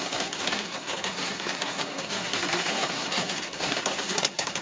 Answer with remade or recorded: remade